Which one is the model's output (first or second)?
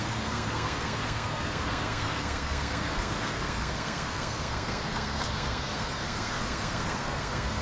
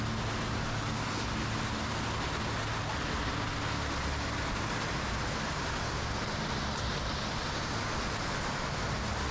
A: first